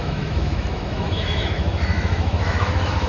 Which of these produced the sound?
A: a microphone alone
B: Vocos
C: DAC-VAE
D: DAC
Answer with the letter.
C